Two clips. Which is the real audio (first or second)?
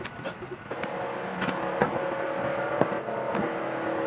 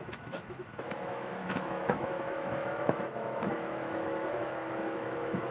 first